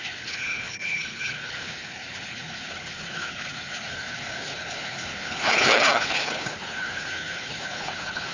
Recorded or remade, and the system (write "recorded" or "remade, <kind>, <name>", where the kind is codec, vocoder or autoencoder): remade, codec, HILCodec